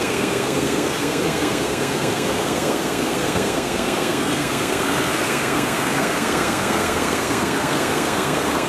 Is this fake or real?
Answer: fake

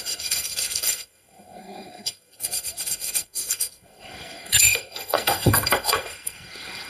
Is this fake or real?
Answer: fake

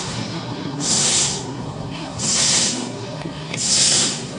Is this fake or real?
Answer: fake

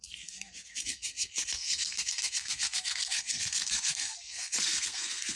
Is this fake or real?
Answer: fake